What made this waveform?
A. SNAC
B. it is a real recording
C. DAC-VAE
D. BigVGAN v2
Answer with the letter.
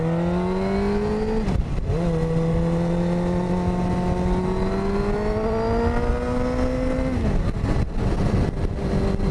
B